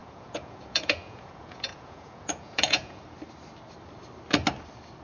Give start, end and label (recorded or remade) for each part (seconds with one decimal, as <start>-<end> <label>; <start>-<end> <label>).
0.0-3.0 remade; 3.0-5.0 recorded